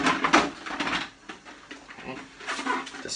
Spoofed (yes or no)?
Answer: no